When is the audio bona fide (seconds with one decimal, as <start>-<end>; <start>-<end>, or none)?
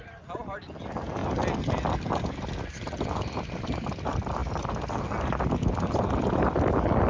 0.0-7.1